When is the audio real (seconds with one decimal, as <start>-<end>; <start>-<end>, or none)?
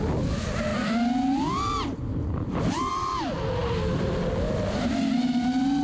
0.0-5.8